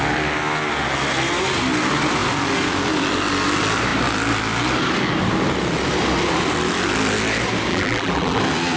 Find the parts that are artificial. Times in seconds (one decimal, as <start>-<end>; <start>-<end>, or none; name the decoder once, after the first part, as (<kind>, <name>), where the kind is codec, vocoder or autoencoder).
7.7-8.4 (vocoder, BigVGAN v2)

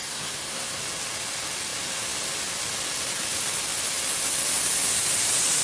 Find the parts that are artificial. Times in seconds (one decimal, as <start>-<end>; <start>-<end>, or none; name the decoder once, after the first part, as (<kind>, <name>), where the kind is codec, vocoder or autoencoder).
0.0-0.8 (codec, SNAC)

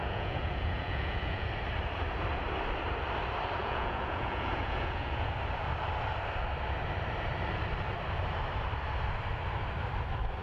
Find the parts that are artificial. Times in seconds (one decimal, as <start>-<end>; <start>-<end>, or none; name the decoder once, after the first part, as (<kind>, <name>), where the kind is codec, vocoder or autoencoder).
0.0-1.5 (vocoder, Vocos); 3.6-5.3

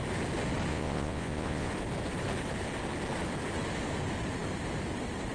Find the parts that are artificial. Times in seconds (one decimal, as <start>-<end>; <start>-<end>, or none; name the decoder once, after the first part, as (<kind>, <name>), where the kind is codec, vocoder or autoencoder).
0.7-1.7 (vocoder, Vocos)

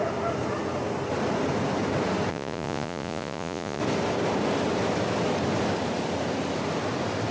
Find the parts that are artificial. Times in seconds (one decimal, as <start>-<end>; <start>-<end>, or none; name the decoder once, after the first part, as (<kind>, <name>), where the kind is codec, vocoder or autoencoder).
2.3-3.8 (vocoder, Vocos)